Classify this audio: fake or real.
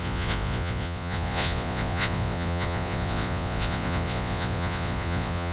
fake